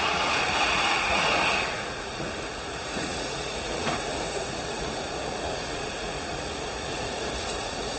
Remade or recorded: remade